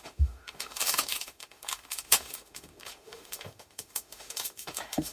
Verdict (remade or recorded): remade